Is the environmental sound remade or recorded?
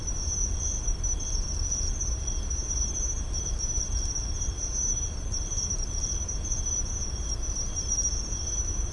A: recorded